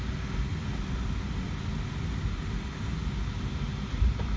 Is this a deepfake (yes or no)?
no